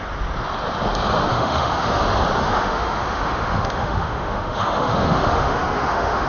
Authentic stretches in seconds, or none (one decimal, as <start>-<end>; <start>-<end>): 0.0-1.3; 2.0-2.4